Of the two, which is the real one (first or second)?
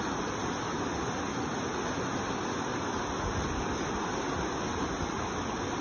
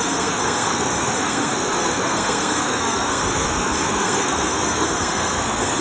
first